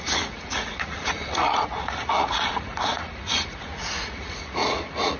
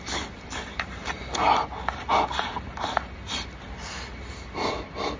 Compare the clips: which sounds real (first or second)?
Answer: second